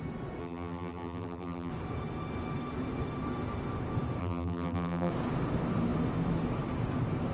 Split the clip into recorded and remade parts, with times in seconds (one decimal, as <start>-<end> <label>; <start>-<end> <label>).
0.0-0.4 recorded; 0.4-1.7 remade; 1.7-4.2 recorded; 4.2-5.1 remade; 5.1-7.3 recorded